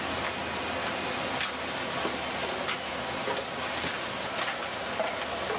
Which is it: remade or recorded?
recorded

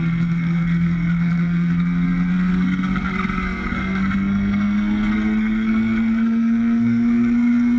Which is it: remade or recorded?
remade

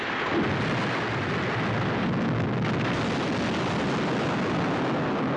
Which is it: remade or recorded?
recorded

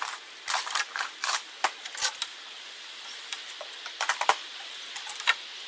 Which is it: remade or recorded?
recorded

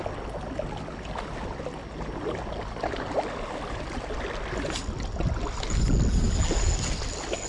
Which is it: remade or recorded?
recorded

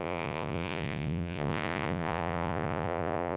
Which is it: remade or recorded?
remade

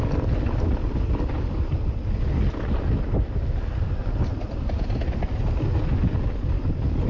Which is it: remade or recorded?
recorded